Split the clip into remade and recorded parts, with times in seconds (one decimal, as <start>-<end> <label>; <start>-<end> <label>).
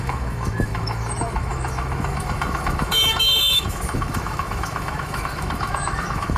0.0-6.4 remade